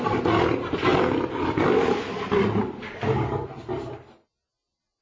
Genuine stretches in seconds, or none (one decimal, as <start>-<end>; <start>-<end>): 0.0-5.0